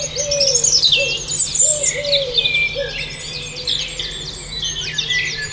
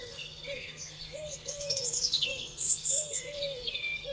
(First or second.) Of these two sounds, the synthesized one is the second